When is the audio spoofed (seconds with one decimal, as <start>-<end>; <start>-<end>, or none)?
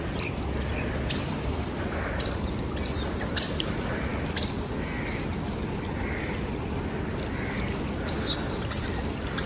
none